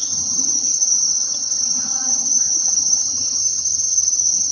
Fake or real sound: fake